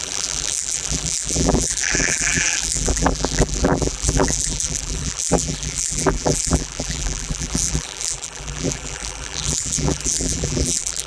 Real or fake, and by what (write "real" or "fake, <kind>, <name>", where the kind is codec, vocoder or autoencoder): fake, vocoder, BigVGAN v2